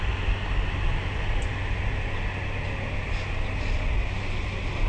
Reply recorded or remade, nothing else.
recorded